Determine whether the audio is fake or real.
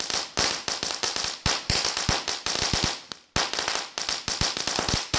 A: real